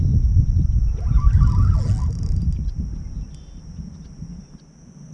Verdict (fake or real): real